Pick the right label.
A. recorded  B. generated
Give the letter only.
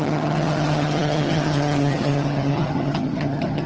B